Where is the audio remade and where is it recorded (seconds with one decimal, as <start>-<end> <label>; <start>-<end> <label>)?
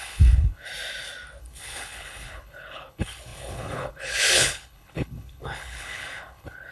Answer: 0.0-0.7 remade; 0.7-1.4 recorded; 1.4-6.7 remade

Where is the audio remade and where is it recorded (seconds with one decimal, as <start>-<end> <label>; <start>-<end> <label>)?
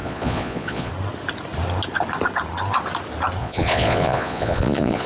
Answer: 0.0-0.9 remade; 0.9-3.4 recorded; 3.4-5.1 remade